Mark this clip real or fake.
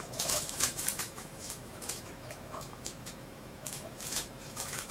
fake